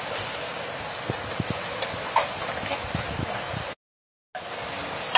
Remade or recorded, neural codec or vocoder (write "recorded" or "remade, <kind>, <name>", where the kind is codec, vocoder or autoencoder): recorded